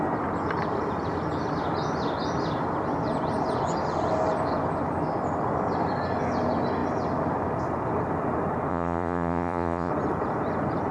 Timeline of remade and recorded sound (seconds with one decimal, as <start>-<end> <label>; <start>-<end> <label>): 0.0-8.7 recorded; 8.7-9.9 remade; 9.9-10.9 recorded

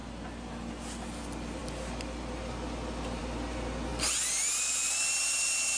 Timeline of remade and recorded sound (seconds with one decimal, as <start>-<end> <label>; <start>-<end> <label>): 0.0-5.8 recorded

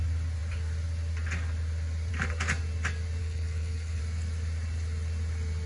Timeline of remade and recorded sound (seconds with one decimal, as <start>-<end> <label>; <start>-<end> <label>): 0.0-3.2 recorded; 3.2-4.0 remade; 4.0-5.7 recorded

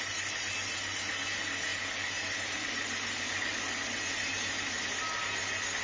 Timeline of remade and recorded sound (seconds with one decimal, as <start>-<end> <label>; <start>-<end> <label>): 0.0-5.8 recorded

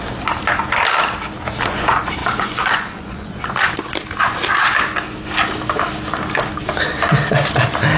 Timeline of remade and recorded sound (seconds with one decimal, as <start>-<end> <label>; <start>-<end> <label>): 0.0-2.2 recorded; 2.2-3.7 remade; 3.7-8.0 recorded

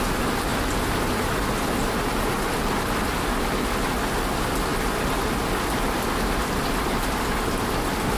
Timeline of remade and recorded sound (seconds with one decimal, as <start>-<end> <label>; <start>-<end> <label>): 0.0-8.2 recorded

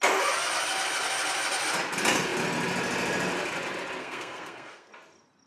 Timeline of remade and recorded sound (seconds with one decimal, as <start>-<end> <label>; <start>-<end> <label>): 0.0-4.0 recorded; 4.0-4.9 remade; 4.9-5.5 recorded